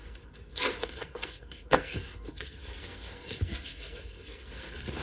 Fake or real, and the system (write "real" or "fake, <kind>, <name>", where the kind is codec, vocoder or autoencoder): fake, codec, SNAC